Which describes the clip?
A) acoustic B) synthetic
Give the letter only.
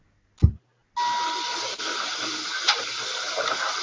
A